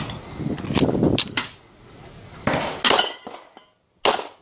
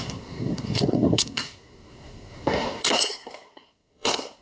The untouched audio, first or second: first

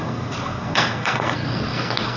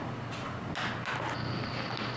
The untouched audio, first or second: second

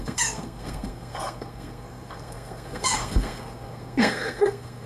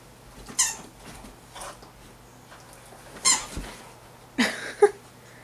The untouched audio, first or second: second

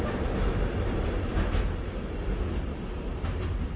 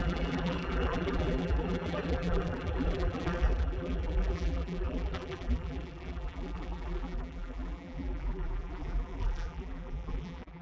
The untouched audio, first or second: first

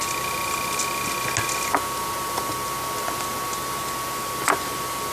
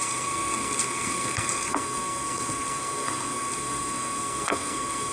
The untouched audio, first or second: first